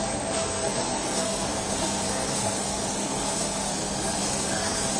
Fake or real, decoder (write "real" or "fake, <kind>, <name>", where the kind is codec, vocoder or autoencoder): fake, codec, SNAC